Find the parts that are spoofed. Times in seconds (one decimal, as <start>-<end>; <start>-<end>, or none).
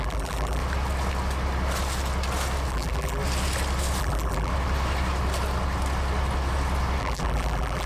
0.0-0.6; 2.7-3.2; 4.0-4.5; 7.0-7.9